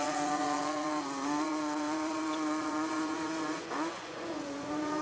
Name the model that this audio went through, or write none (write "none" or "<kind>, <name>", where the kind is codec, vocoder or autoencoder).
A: vocoder, Vocos